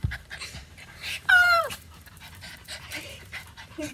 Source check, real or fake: fake